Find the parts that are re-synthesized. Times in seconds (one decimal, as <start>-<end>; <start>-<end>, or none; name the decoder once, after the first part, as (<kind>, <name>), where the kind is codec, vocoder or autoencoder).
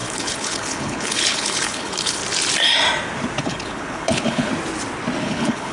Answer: 0.0-2.2 (codec, HILCodec); 3.4-4.5; 5.2-5.7